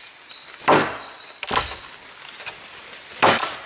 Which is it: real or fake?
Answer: real